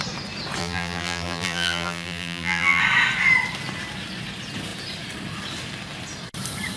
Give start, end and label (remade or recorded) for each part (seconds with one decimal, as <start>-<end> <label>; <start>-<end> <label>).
0.0-0.6 recorded; 0.6-2.8 remade; 2.8-6.8 recorded